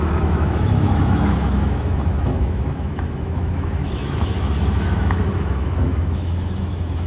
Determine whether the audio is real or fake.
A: fake